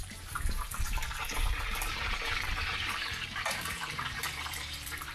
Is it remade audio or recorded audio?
remade